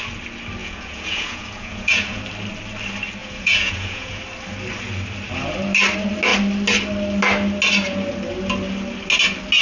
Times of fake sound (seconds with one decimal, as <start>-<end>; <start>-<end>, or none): 0.6-2.2; 3.2-4.2